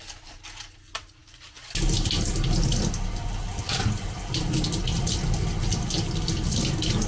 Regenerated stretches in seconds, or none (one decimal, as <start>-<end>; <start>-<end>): none